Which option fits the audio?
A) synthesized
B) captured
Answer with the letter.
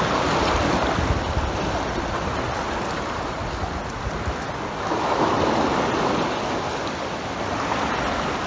B